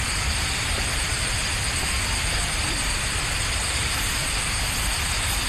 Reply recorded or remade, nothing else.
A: recorded